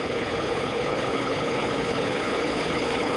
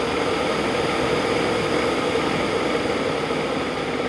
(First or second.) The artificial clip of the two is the first